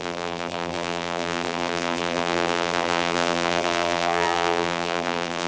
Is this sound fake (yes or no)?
yes